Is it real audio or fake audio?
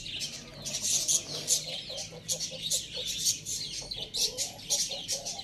real